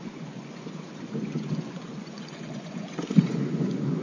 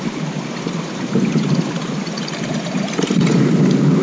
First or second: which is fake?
first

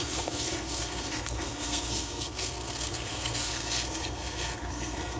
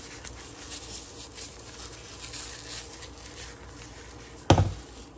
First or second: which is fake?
first